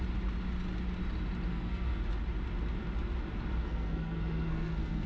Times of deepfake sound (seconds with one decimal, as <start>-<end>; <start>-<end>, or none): 1.5-2.0; 3.6-5.1